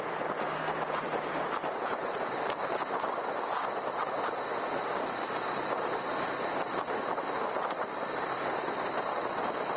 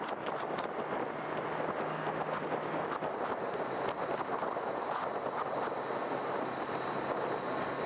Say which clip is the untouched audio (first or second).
second